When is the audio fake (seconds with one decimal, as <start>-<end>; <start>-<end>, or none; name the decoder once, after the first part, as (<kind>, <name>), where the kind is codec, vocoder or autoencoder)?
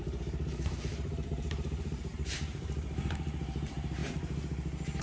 0.0-4.0 (vocoder, BigVGAN v2)